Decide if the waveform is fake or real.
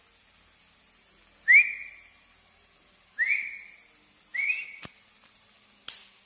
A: real